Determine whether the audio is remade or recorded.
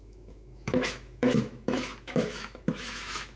remade